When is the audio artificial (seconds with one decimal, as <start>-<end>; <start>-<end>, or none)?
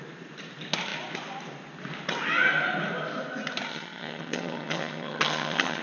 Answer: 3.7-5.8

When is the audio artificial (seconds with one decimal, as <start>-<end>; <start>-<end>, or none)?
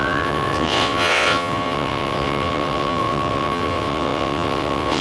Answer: 0.0-5.0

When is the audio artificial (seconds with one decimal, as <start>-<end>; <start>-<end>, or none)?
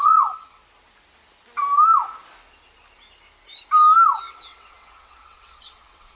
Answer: 0.0-0.6; 4.3-6.2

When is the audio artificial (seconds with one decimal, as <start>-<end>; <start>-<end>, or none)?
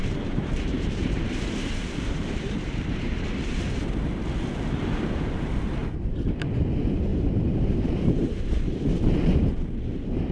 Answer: 0.0-3.9; 5.8-6.3; 7.1-8.6